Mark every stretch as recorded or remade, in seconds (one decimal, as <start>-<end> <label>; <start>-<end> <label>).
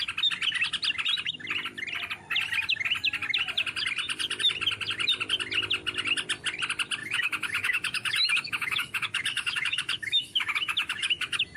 0.0-7.0 recorded; 7.0-11.6 remade